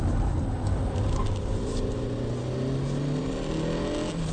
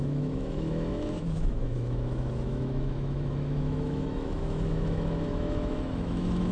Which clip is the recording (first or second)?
first